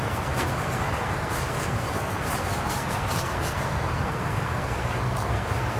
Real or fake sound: fake